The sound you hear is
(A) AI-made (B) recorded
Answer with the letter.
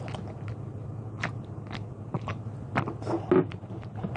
B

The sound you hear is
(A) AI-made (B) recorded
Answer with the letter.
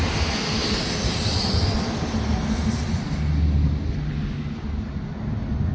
B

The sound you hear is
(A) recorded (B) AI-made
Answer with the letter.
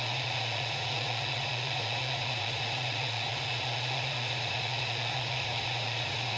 B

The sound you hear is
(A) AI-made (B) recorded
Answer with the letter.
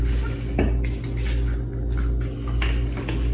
B